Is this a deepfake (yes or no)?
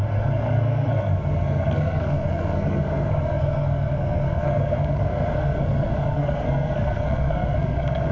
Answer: yes